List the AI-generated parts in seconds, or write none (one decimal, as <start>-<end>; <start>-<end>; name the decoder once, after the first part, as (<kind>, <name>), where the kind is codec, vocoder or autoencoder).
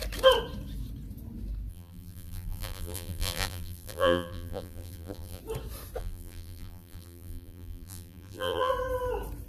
1.7-5.4 (vocoder, BigVGAN v2); 6.0-8.7